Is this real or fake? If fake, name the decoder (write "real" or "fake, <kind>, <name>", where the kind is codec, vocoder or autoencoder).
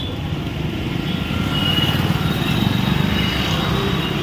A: real